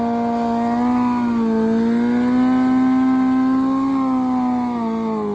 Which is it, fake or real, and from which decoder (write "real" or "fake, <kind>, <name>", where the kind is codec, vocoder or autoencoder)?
real